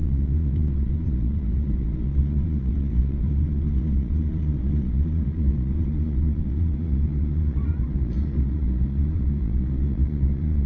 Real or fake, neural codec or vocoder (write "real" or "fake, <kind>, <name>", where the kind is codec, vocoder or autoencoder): fake, vocoder, Vocos